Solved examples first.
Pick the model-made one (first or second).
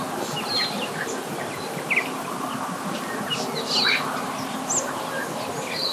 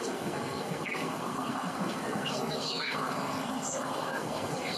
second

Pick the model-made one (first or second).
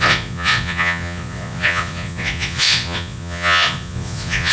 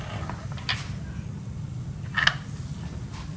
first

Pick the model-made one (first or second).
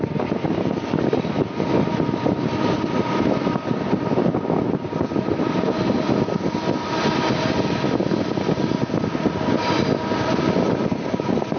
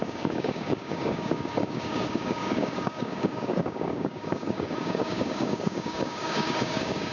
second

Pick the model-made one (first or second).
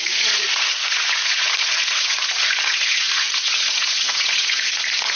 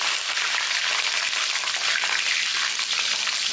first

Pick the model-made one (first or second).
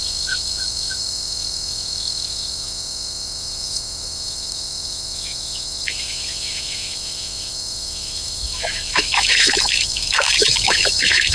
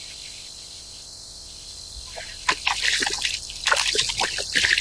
first